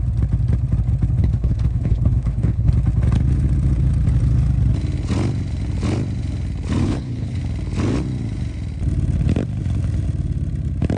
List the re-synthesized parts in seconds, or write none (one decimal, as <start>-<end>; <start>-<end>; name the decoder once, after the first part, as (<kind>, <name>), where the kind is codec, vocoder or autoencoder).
1.2-2.7 (codec, HILCodec); 6.8-7.4